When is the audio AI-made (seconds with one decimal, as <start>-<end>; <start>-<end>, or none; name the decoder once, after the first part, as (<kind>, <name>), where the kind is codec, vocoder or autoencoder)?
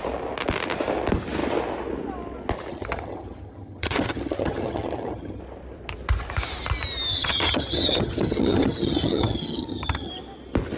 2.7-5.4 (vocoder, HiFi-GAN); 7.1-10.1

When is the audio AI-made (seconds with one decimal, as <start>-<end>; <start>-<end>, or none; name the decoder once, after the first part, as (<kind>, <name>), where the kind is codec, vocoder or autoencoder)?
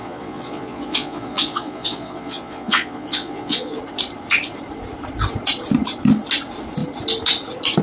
0.0-3.8 (vocoder, Vocos)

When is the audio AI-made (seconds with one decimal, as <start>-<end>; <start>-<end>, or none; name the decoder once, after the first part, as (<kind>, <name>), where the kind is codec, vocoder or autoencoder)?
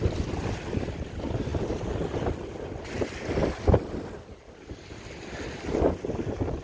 none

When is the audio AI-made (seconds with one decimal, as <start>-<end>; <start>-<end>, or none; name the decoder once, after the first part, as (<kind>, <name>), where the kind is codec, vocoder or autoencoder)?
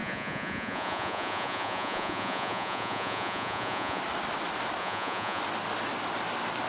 0.0-4.0 (vocoder, Vocos); 4.8-5.4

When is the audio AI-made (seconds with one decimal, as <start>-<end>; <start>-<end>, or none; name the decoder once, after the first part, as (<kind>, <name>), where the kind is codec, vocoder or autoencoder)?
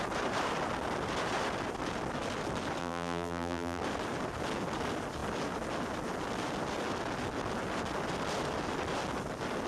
2.8-3.8 (vocoder, BigVGAN v2)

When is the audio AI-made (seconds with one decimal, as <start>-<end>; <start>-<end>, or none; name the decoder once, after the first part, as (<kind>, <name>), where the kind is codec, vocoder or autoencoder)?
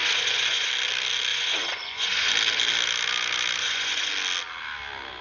0.0-0.7 (vocoder, Vocos); 1.3-2.3; 3.6-4.1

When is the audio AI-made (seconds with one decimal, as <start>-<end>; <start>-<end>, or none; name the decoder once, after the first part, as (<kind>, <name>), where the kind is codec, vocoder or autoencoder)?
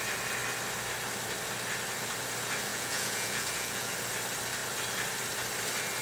2.7-3.9 (vocoder, Vocos)